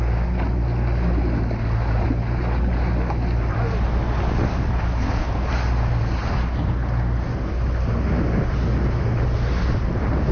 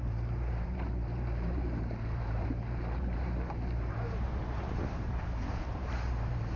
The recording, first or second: first